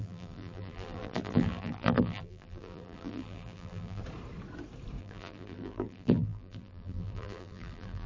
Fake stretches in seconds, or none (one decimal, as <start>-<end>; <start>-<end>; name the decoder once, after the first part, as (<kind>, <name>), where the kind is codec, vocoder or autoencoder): 0.0-4.0 (vocoder, BigVGAN v2); 5.0-8.1